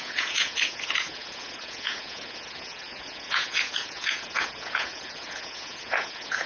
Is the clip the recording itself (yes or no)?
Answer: no